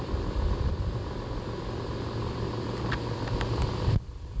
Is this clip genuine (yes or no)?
no